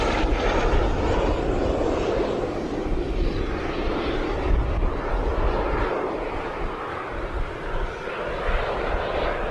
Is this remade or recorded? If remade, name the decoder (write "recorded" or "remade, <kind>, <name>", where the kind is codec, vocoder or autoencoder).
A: recorded